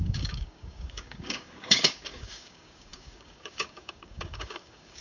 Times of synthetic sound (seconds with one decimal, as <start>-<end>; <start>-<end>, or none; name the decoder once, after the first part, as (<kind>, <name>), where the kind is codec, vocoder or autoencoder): 0.0-5.0 (codec, DAC)

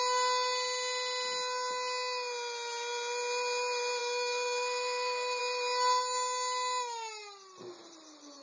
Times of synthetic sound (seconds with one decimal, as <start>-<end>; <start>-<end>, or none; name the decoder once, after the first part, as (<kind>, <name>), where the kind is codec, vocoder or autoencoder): 4.0-5.4 (codec, DAC)

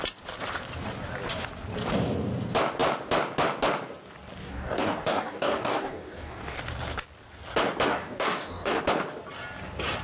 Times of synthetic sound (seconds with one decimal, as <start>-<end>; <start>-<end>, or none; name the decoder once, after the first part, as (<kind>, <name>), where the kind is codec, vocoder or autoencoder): 4.4-6.6 (codec, DAC); 7.9-8.8